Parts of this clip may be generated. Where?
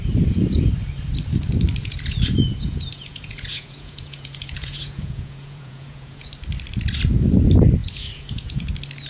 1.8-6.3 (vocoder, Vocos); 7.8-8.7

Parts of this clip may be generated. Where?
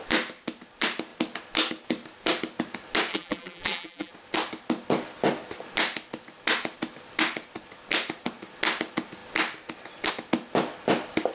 3.1-4.1 (vocoder, BigVGAN v2)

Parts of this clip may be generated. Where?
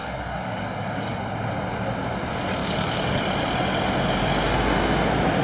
0.0-1.2 (codec, DAC); 2.6-3.2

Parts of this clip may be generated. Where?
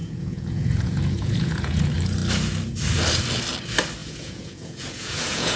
0.0-1.8 (vocoder, Vocos); 4.0-5.6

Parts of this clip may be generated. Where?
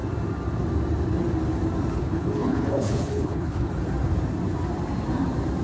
2.0-3.7 (codec, HILCodec)